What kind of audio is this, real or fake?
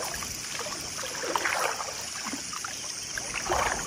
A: real